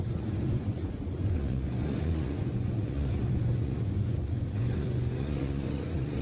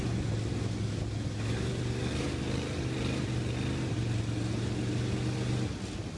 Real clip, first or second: second